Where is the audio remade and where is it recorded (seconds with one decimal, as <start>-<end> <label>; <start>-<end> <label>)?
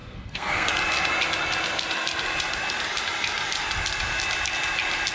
0.0-0.7 remade; 0.7-5.1 recorded